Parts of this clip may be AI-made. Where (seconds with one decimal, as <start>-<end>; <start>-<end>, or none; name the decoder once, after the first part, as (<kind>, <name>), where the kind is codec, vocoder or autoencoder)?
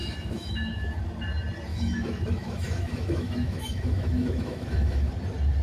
0.0-1.0 (autoencoder, DAC-VAE); 1.7-5.1